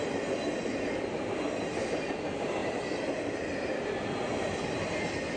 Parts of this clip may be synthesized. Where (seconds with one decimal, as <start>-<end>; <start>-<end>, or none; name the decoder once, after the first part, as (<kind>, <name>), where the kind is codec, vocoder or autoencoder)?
none